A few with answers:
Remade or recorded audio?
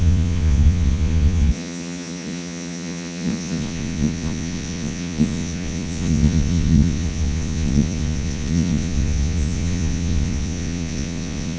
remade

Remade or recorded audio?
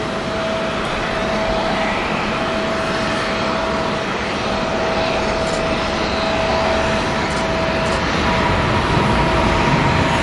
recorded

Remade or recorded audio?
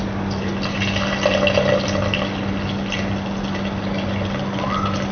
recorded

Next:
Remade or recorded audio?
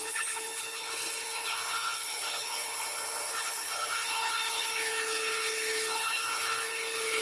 remade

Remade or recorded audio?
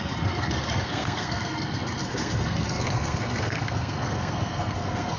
remade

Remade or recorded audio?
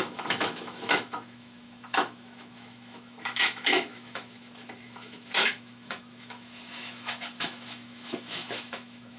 remade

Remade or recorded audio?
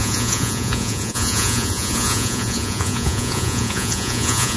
remade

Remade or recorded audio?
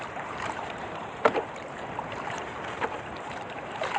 remade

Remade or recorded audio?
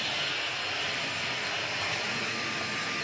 recorded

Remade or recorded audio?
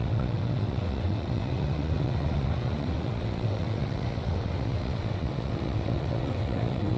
remade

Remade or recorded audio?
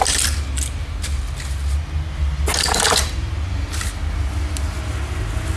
recorded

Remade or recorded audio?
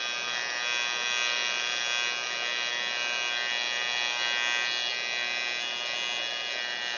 recorded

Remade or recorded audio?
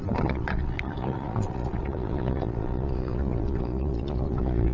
remade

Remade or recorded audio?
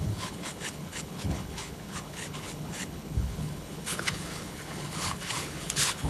remade